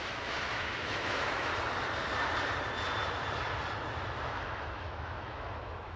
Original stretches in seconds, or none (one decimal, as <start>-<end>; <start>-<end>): 1.5-4.3